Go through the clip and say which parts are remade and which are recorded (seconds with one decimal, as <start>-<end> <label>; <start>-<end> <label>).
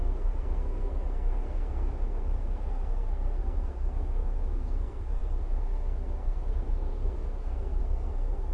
0.0-8.5 remade